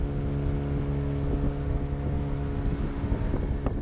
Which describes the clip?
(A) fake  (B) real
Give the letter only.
B